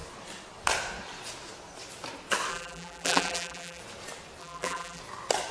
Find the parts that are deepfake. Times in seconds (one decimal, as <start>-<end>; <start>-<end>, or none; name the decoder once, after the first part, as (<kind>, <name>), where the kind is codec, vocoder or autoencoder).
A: 2.5-3.8 (vocoder, BigVGAN v2); 4.4-5.0